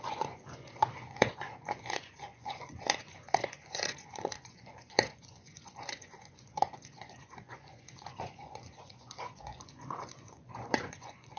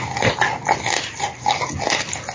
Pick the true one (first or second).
second